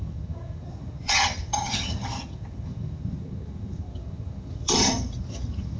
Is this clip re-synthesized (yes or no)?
yes